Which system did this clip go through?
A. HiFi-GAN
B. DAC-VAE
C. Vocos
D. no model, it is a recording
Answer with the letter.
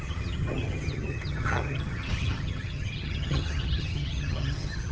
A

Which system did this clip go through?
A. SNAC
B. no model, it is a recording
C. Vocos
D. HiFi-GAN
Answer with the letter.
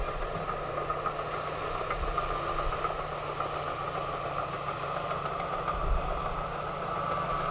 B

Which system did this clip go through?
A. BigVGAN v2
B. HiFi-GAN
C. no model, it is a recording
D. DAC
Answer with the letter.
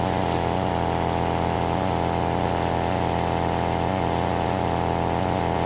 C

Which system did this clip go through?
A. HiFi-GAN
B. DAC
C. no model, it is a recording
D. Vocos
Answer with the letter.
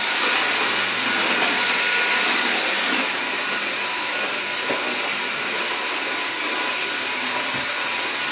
C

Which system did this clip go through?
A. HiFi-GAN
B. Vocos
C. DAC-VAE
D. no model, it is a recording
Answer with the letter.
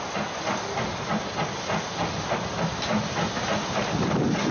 D